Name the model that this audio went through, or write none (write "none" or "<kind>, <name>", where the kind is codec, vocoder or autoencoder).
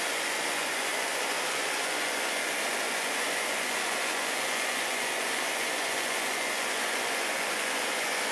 vocoder, Vocos